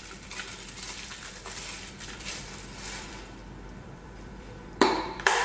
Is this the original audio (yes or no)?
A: no